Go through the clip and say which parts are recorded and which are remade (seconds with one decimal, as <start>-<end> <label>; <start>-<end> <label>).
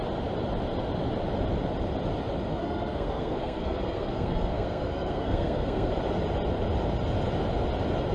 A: 0.0-2.5 recorded; 2.5-5.9 remade; 5.9-8.1 recorded